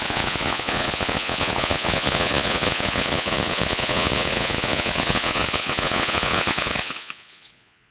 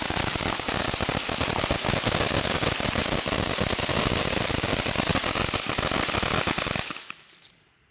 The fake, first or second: first